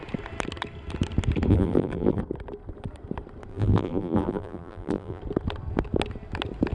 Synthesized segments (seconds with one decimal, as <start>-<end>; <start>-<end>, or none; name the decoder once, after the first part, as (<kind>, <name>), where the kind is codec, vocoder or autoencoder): 1.5-2.2 (vocoder, BigVGAN v2); 3.5-5.2